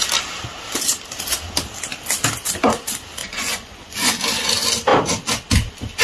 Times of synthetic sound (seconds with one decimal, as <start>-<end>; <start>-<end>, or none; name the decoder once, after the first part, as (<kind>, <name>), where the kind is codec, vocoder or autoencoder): 3.2-4.1 (vocoder, Vocos)